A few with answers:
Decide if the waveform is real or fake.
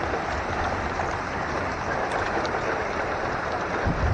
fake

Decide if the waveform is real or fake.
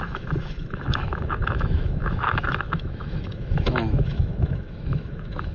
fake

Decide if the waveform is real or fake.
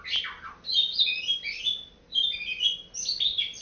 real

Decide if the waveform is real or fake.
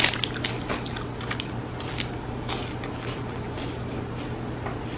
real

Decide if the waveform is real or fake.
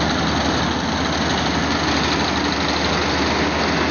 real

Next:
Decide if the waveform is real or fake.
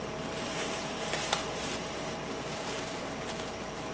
fake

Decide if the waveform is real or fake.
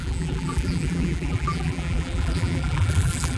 fake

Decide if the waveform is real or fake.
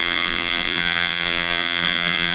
fake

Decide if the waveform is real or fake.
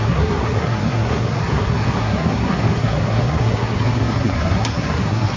fake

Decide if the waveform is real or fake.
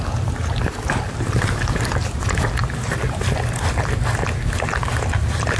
real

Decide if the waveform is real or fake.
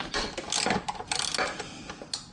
real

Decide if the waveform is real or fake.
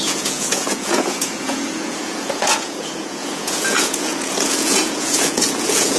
fake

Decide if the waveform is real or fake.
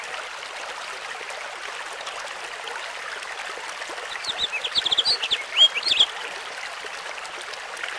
real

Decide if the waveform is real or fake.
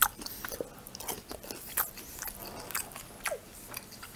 real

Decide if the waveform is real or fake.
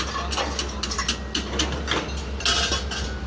real